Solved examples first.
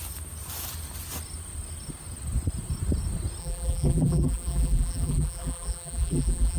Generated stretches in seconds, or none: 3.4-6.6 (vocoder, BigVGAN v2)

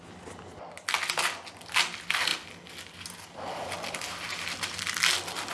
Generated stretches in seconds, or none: none

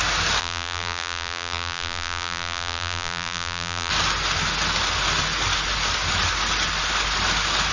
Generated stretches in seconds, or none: 0.4-3.9 (vocoder, BigVGAN v2)

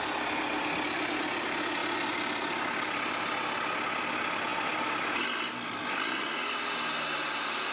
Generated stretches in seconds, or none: none

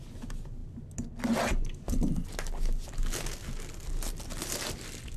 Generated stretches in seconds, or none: none

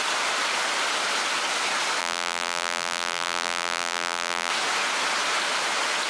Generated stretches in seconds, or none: 2.0-4.5 (vocoder, BigVGAN v2)